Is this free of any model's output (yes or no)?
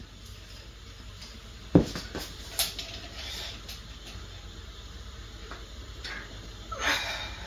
yes